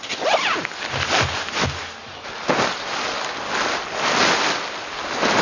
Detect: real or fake real